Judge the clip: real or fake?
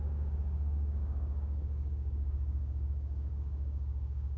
fake